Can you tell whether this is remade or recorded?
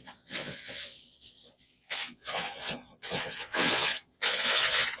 remade